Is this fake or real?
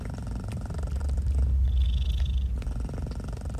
real